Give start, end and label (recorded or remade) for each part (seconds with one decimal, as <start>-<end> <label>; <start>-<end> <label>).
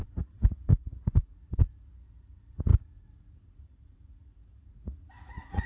0.0-5.7 remade